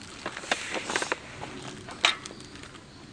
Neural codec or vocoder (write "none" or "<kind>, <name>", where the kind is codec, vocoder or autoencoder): none